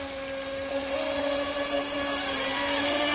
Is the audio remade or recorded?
recorded